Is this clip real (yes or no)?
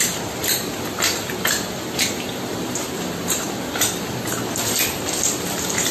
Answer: yes